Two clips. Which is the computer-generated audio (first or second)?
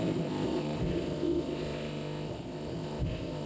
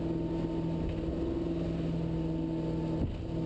first